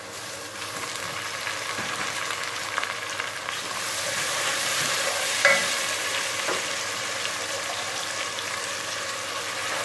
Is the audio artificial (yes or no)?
yes